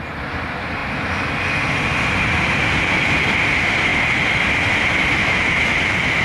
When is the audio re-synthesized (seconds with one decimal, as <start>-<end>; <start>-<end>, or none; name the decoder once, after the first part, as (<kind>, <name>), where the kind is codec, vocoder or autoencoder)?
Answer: 5.2-5.8 (autoencoder, DAC-VAE)